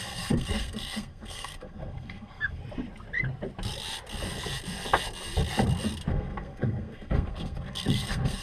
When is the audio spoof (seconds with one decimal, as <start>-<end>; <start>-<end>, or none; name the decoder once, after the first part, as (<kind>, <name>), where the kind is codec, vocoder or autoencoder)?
0.0-2.6 (codec, SNAC); 6.1-8.4